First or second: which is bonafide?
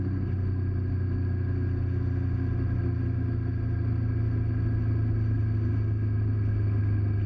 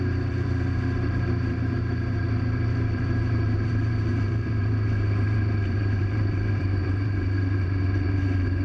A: first